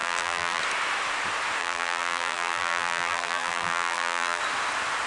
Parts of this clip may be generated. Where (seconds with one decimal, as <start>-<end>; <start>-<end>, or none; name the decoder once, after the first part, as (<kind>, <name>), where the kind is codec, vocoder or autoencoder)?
0.0-0.6 (vocoder, BigVGAN v2); 1.6-4.4